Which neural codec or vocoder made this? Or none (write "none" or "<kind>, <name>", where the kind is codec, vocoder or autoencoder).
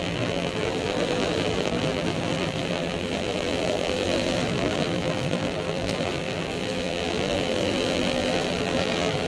vocoder, BigVGAN v2